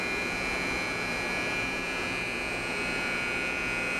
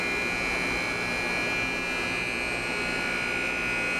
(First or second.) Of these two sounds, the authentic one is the second